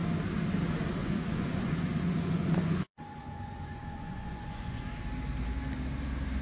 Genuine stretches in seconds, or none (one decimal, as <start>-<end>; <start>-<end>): 0.0-1.0; 4.8-6.4

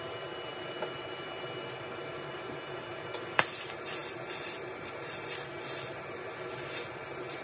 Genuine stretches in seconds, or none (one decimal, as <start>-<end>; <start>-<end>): 0.0-7.4

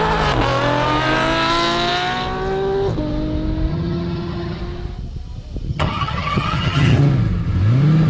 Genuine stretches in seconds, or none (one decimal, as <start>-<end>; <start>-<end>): 0.0-3.7; 4.6-5.7; 7.0-8.1

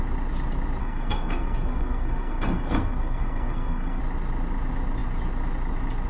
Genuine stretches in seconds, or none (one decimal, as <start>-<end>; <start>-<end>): 0.0-0.8; 4.0-6.1

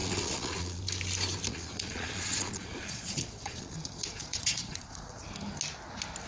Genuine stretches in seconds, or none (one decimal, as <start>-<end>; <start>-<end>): 0.8-1.5; 5.3-6.3

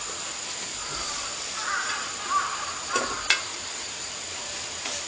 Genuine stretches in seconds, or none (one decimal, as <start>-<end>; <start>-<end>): 0.0-0.7; 2.9-3.5; 4.2-5.1

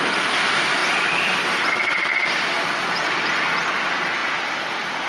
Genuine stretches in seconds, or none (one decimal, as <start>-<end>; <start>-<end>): 0.0-5.1

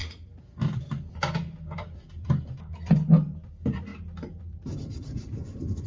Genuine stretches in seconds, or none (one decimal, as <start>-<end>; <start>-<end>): 3.9-4.4